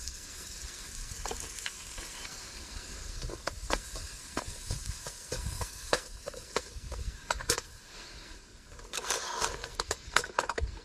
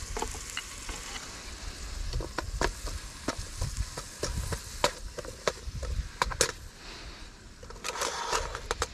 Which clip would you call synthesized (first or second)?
first